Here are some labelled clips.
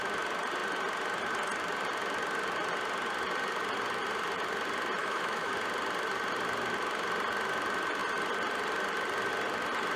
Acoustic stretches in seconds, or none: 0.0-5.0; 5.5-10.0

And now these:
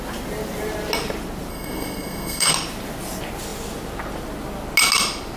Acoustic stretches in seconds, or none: 0.0-1.5; 2.5-5.4

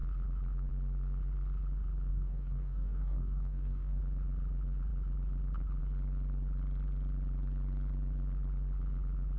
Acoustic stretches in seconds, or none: 0.0-2.1; 4.0-9.4

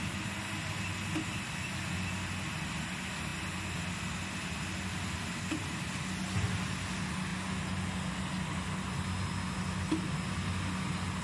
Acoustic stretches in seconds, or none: 0.0-11.2